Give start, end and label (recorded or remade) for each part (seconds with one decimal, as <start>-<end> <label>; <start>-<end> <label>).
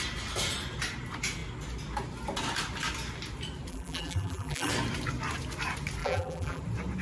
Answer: 0.0-3.7 recorded; 3.7-4.7 remade; 4.7-6.0 recorded; 6.0-6.6 remade; 6.6-7.0 recorded